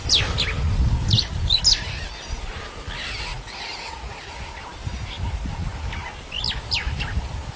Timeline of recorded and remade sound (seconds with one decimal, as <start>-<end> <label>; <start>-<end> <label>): 0.0-3.3 recorded; 3.3-4.3 remade; 4.3-7.6 recorded